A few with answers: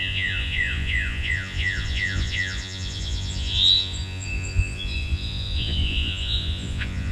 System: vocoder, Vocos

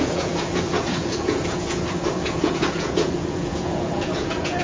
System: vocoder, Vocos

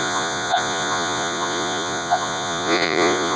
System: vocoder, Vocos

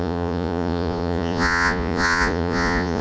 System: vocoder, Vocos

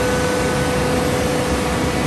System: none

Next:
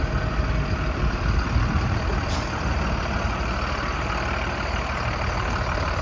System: none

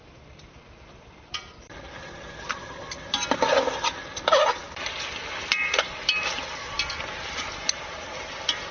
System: none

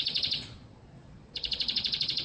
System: vocoder, Vocos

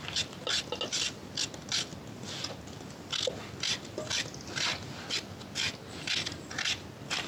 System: none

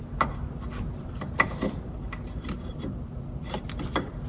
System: none